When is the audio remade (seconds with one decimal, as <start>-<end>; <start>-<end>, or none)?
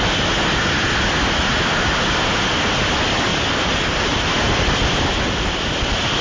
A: 3.3-4.3